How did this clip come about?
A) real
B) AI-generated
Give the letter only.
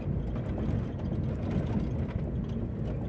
A